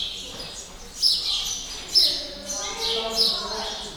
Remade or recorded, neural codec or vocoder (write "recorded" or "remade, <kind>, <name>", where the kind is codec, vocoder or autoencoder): recorded